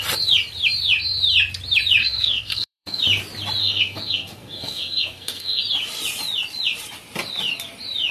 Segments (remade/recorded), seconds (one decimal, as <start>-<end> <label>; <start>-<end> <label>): 0.0-2.0 recorded; 2.0-3.0 remade; 3.0-3.6 recorded; 3.6-5.6 remade; 5.6-8.1 recorded